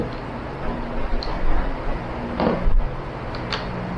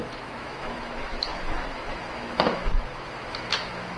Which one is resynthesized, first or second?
second